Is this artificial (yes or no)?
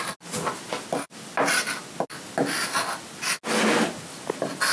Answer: no